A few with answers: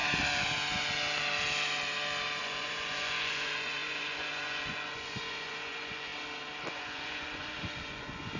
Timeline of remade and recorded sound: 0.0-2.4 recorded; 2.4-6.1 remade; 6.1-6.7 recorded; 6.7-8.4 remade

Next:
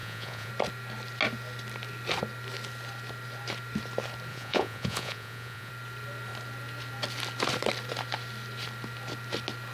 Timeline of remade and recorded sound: 0.0-0.5 remade; 0.5-4.3 recorded; 4.3-5.7 remade; 5.7-9.7 recorded